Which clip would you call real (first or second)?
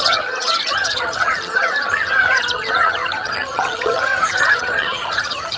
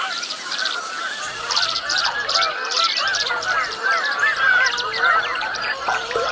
second